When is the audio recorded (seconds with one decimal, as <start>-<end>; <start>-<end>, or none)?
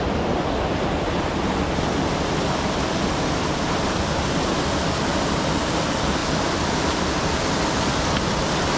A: 0.0-8.8